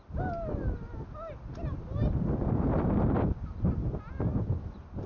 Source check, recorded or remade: recorded